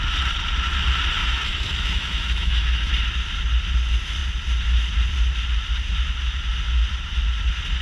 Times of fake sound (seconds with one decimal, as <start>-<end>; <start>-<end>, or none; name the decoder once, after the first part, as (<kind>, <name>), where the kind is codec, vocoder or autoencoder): 1.2-2.9 (autoencoder, DAC-VAE)